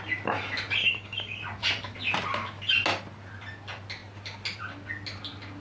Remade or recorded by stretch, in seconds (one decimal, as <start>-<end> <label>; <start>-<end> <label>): 0.0-0.8 recorded; 0.8-1.4 remade; 1.4-5.6 recorded